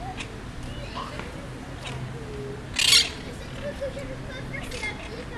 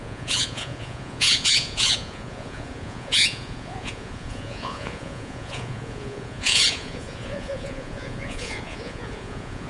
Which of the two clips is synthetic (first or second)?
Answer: second